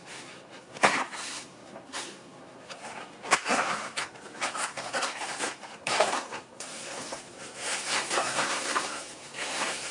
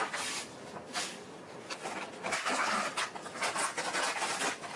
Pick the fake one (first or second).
first